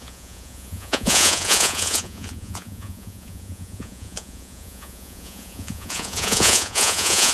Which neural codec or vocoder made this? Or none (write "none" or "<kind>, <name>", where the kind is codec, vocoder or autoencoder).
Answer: vocoder, Vocos